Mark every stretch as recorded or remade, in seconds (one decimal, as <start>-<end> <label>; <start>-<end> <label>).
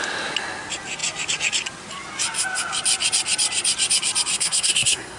0.0-4.3 recorded; 4.3-5.2 remade